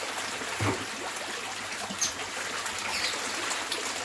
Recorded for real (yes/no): yes